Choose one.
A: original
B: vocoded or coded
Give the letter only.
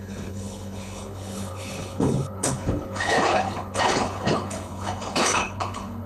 B